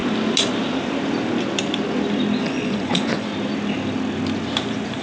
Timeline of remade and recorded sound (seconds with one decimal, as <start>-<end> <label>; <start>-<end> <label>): 0.0-2.4 recorded; 2.4-3.3 remade; 3.3-5.0 recorded